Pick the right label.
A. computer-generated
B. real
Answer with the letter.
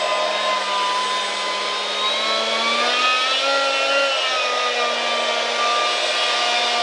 B